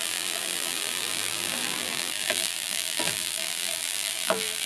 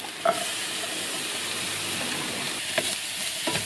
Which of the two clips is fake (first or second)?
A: first